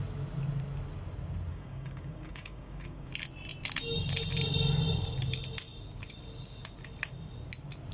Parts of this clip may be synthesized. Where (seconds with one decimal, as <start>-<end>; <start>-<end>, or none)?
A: 1.5-3.1